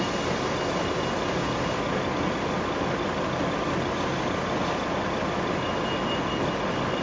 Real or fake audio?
real